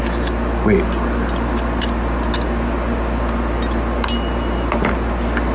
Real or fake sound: real